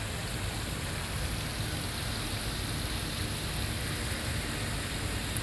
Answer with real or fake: real